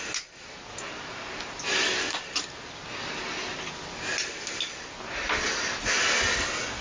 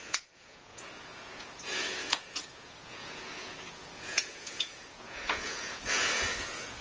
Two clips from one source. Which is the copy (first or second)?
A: second